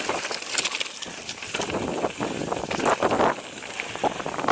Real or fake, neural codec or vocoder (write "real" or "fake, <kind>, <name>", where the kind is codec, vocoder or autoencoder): real